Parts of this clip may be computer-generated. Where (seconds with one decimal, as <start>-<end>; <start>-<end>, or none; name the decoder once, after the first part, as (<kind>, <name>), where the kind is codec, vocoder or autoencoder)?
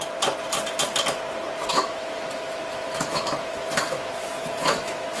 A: 1.7-5.2 (autoencoder, DAC-VAE)